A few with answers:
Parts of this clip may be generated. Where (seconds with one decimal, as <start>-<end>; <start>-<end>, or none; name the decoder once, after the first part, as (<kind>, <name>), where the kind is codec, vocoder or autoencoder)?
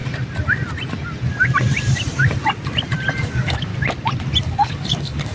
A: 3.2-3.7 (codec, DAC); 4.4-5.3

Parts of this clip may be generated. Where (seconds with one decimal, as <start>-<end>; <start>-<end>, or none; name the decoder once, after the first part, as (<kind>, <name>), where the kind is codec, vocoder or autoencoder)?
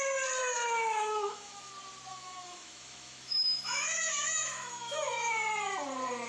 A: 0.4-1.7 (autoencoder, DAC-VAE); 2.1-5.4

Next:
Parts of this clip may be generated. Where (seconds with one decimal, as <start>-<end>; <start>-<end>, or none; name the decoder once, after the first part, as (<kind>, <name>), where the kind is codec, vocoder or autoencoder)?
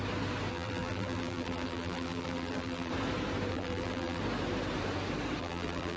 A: 0.5-2.9 (vocoder, BigVGAN v2); 3.5-4.2; 5.4-6.0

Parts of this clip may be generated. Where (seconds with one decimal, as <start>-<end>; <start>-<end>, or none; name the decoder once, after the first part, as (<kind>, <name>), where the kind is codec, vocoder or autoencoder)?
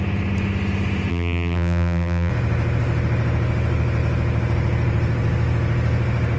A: 1.1-2.3 (vocoder, BigVGAN v2)